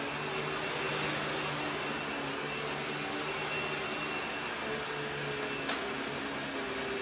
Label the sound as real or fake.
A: real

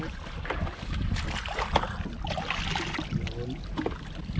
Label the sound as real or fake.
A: real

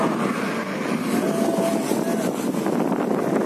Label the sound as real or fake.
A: real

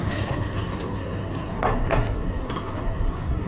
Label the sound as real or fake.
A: fake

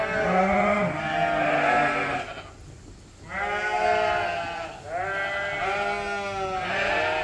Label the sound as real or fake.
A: real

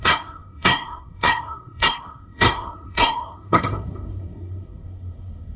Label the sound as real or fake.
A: fake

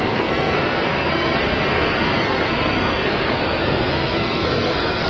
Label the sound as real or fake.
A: fake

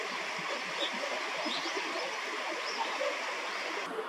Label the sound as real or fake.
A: real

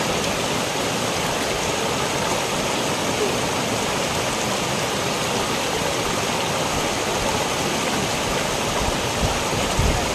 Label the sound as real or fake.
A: real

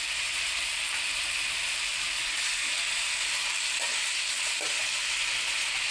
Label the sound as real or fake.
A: real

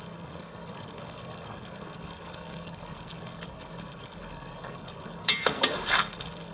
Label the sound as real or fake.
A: fake